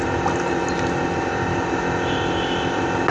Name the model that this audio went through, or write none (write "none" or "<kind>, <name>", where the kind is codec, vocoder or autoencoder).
none